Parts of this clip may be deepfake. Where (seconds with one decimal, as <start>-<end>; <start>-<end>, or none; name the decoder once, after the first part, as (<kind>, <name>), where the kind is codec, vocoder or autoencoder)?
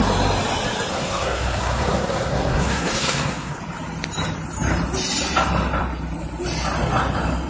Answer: 0.9-3.6 (codec, SNAC)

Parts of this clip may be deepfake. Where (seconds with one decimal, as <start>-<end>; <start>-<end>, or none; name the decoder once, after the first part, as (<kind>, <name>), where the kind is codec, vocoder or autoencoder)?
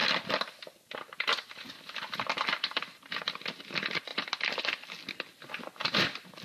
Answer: none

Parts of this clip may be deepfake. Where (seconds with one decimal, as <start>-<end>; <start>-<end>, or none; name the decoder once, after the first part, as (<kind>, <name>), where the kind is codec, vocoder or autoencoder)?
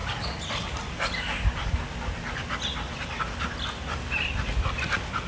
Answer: none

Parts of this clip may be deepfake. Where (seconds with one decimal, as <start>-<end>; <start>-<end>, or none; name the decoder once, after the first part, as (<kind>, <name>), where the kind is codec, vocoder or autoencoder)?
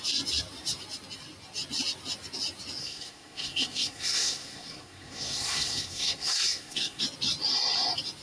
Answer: 2.8-7.0 (codec, SNAC)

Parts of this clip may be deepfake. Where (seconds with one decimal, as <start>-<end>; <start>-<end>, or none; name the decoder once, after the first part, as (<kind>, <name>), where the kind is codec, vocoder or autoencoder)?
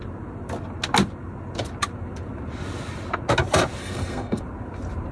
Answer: 3.8-4.4 (codec, SNAC)